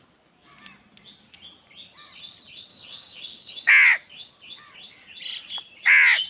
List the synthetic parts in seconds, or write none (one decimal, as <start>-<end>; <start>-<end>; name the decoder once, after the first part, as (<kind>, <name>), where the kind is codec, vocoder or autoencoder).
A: 2.7-3.7 (codec, DAC)